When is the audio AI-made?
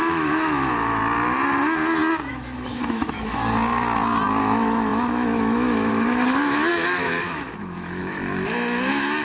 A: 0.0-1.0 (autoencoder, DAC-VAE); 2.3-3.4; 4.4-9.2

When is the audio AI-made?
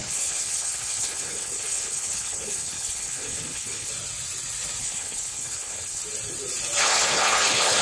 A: 0.0-3.9 (codec, HILCodec); 4.8-6.0; 6.8-7.8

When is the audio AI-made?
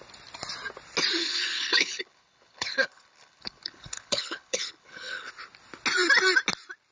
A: 1.2-5.3 (codec, HILCodec)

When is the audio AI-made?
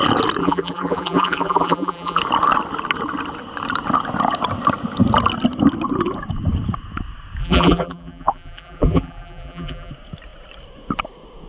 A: 0.4-2.2 (vocoder, BigVGAN v2); 7.4-9.9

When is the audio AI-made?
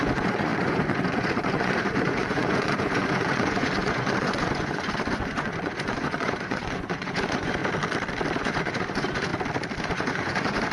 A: 0.0-7.6 (vocoder, Vocos); 8.3-9.3; 9.8-10.7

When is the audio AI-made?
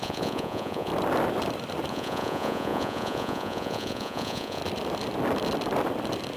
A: 0.0-0.9 (vocoder, Vocos); 1.9-4.6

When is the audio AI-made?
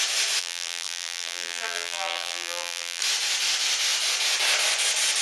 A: 0.4-3.0 (vocoder, BigVGAN v2)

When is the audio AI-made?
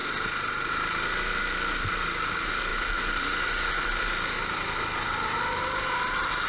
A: none